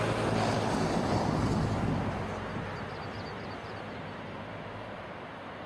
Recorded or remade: recorded